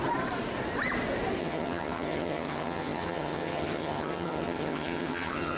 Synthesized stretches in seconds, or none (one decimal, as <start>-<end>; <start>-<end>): 1.4-5.6